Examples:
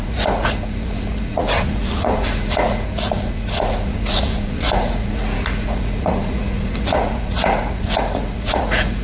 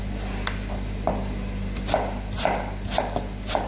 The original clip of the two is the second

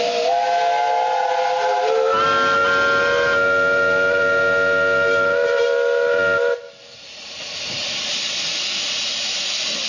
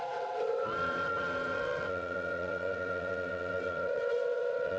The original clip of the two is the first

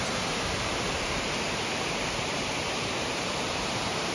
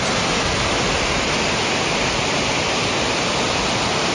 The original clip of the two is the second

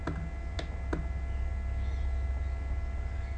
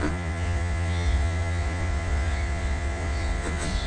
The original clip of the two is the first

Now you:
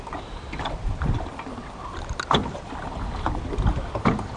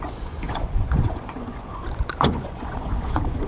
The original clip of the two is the first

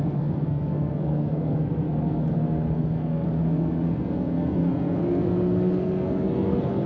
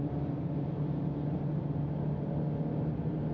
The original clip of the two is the second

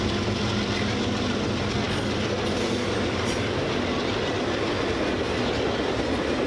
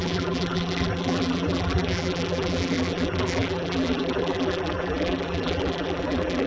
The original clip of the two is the first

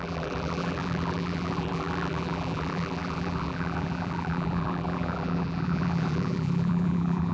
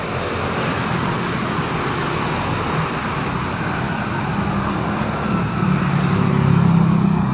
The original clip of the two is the second